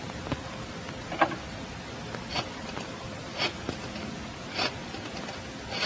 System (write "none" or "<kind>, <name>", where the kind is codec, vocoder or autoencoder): none